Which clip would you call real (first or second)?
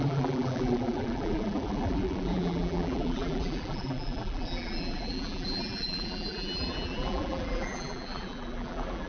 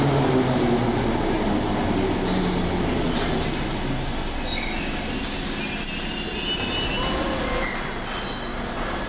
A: second